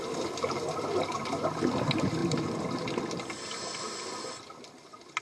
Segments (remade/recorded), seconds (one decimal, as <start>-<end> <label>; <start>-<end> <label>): 0.0-5.2 recorded